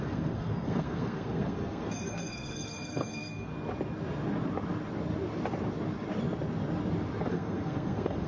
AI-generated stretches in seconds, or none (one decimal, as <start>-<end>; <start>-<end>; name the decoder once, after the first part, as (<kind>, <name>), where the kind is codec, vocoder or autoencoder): 0.0-3.5 (codec, SNAC); 7.3-8.3